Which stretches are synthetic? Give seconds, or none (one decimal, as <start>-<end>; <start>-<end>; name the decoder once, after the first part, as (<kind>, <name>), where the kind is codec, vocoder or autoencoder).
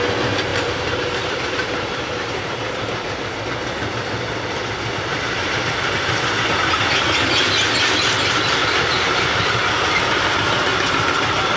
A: 0.5-3.3 (vocoder, BigVGAN v2); 5.1-6.8; 8.6-9.6